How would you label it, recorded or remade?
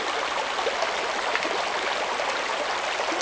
recorded